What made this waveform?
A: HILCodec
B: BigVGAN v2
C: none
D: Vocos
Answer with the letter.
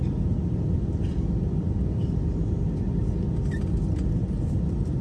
C